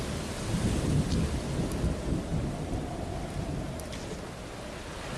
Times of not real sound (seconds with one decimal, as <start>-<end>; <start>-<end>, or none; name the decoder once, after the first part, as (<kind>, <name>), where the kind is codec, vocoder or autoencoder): none